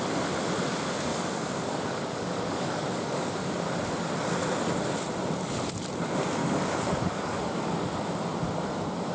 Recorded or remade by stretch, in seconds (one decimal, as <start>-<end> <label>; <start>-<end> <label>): 0.0-1.1 recorded; 1.1-3.3 remade; 3.3-6.4 recorded; 6.4-8.2 remade; 8.2-9.1 recorded